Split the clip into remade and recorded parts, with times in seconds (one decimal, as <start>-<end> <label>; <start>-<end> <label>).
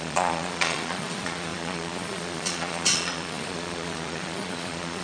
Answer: 0.0-5.0 remade